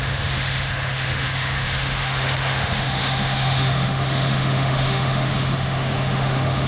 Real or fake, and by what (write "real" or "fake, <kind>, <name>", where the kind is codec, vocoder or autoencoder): fake, autoencoder, DAC-VAE